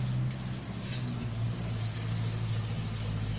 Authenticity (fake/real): real